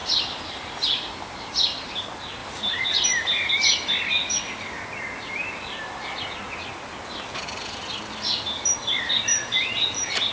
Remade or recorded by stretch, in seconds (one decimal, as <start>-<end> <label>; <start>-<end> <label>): 0.0-1.5 remade; 1.5-2.4 recorded; 2.4-3.5 remade; 3.5-9.3 recorded; 9.3-10.3 remade